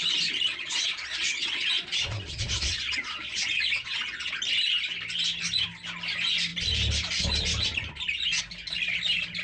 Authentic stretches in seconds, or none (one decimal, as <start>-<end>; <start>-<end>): 0.0-0.5; 4.3-9.4